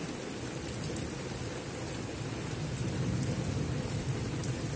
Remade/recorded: recorded